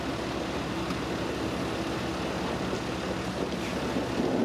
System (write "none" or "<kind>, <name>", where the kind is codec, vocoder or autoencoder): none